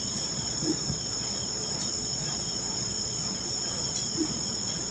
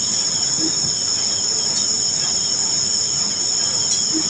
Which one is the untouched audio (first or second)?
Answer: second